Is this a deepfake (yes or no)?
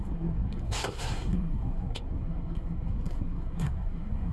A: yes